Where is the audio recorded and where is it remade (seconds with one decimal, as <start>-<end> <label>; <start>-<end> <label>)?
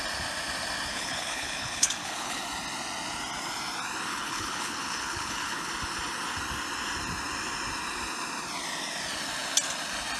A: 0.0-0.9 recorded; 0.9-2.4 remade; 2.4-4.1 recorded; 4.1-5.7 remade; 5.7-10.2 recorded